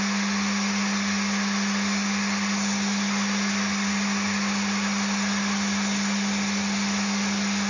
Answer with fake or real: real